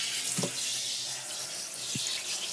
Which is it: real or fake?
real